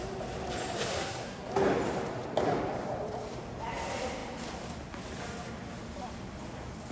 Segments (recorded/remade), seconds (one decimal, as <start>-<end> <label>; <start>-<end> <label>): 0.0-0.9 recorded; 0.9-1.5 remade; 1.5-6.9 recorded